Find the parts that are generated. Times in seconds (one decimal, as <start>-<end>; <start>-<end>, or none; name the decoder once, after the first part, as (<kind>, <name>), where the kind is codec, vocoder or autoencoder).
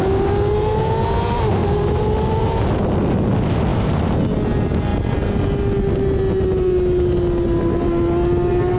3.7-4.2 (vocoder, BigVGAN v2)